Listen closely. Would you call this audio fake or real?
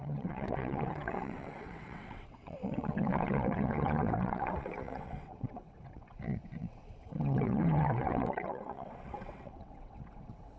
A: fake